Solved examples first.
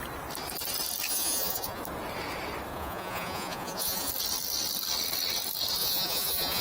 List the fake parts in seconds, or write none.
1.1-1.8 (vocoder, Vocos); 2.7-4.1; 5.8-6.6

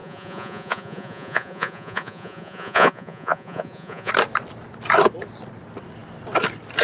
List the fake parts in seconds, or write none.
0.0-4.1 (vocoder, Vocos)

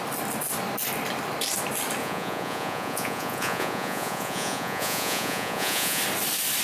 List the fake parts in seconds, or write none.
2.0-6.0 (vocoder, Vocos)

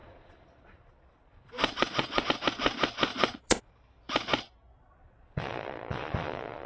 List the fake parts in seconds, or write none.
0.0-2.2 (vocoder, Vocos); 3.1-3.7; 4.7-6.7

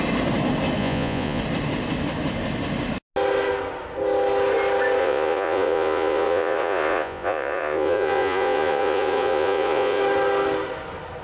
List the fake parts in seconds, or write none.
0.8-1.4 (vocoder, Vocos); 5.0-10.0

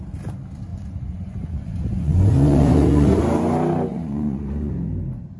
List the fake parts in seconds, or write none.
0.7-3.2 (vocoder, Vocos); 3.9-4.7

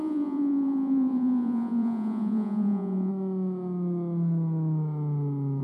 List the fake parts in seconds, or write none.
0.0-3.1 (vocoder, Vocos)

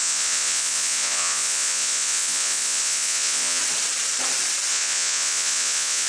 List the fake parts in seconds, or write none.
0.0-3.6 (vocoder, Vocos); 4.7-6.1